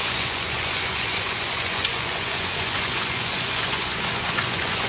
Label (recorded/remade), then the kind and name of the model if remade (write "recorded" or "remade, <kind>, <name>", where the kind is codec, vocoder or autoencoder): remade, vocoder, Vocos